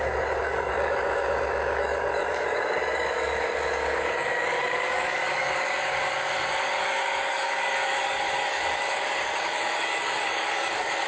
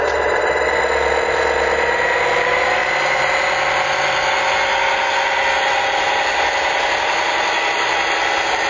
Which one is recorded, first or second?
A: second